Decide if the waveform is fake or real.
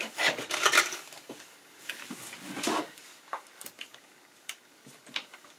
fake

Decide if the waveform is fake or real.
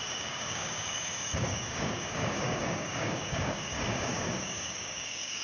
fake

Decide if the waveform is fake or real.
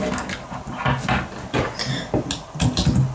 real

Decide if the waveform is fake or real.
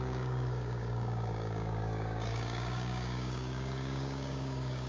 fake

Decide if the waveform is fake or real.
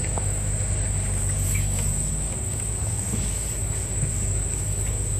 fake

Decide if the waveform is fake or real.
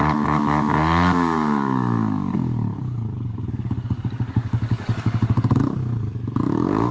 fake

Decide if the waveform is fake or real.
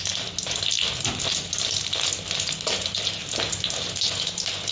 real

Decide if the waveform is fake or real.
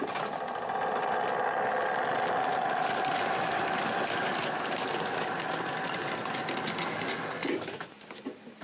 real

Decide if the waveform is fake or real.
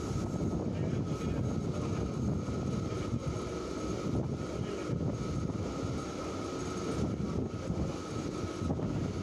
real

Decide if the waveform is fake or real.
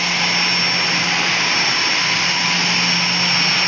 real